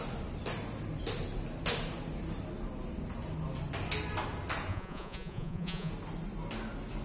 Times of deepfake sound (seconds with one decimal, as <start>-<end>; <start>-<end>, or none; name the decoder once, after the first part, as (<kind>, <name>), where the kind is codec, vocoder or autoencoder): 4.7-5.9 (vocoder, Vocos)